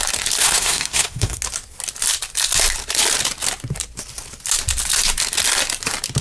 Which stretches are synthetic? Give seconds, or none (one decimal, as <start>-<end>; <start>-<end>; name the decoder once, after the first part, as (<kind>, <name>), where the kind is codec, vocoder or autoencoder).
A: 0.4-1.4 (codec, SNAC)